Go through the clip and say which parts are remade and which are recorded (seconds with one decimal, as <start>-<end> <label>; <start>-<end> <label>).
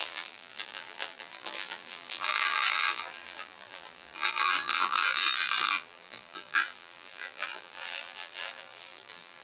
0.0-9.4 remade